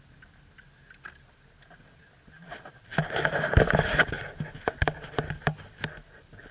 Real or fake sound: real